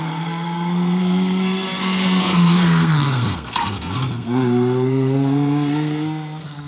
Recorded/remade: remade